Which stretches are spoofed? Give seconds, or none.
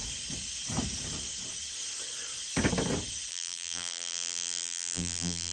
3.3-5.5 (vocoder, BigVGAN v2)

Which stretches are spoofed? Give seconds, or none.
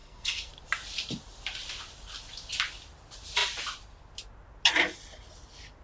0.0-0.5 (codec, SNAC)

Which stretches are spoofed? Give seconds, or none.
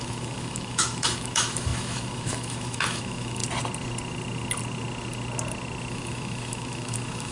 0.0-3.4 (autoencoder, DAC-VAE); 5.9-7.3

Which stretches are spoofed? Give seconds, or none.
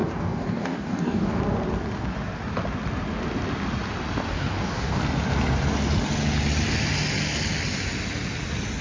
0.0-1.4 (codec, DAC); 4.3-5.0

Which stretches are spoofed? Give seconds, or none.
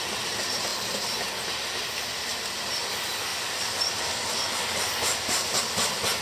2.3-2.9 (vocoder, BigVGAN v2); 3.3-5.6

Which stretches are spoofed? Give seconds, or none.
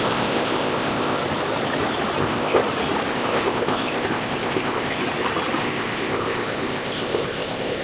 0.0-1.2 (codec, ZipCodec); 2.2-2.6; 3.1-5.0; 5.6-7.8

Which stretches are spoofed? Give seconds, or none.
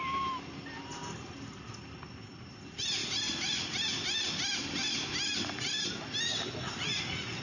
none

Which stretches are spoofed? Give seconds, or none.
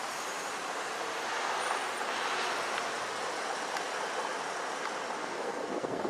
5.2-6.1 (codec, SNAC)